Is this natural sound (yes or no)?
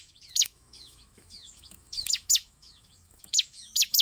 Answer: no